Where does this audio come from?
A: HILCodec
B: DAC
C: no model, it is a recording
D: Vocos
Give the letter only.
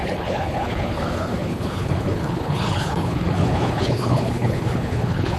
A